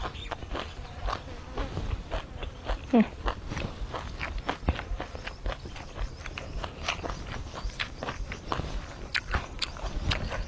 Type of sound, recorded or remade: recorded